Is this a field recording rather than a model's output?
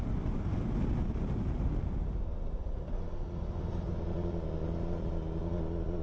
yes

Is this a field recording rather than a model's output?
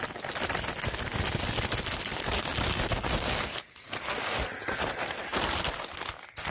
yes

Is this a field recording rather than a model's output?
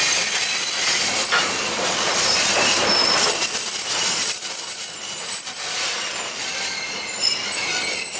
no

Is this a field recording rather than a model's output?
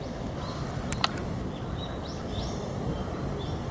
yes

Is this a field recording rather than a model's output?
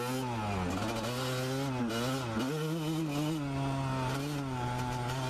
yes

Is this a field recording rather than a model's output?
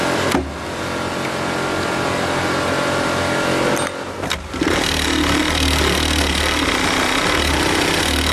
yes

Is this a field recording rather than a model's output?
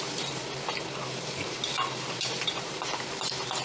no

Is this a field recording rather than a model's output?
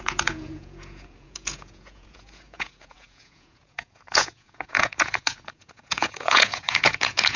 no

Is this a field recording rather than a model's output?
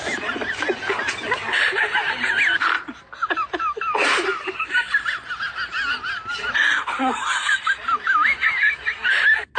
yes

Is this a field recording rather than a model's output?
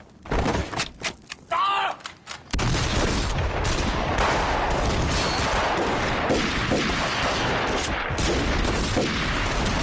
yes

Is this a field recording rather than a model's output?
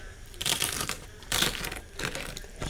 no